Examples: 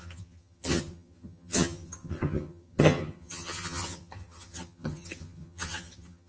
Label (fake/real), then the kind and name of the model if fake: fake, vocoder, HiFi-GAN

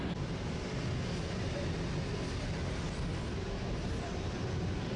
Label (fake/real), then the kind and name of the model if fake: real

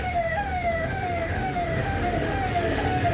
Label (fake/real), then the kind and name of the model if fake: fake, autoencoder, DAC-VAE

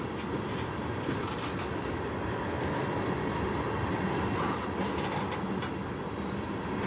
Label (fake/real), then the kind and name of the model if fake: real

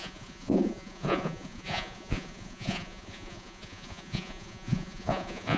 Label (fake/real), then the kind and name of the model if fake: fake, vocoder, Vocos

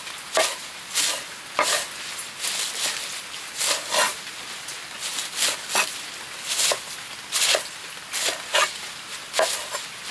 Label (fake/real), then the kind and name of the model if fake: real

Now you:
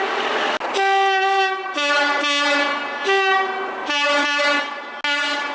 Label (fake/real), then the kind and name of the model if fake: real